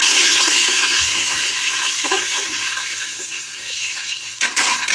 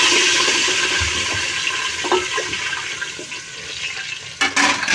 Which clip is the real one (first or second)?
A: second